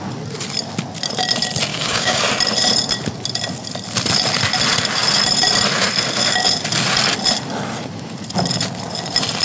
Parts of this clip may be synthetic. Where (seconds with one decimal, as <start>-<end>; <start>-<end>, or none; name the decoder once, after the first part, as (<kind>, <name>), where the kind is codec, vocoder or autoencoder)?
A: 1.7-2.2 (codec, DAC)